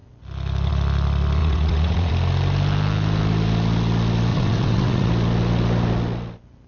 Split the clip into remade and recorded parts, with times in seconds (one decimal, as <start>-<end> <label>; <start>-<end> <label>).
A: 0.0-1.4 recorded; 1.4-2.1 remade; 2.1-4.3 recorded; 4.3-5.1 remade; 5.1-6.7 recorded